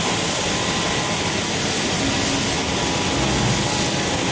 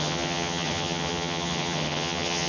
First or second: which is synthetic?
second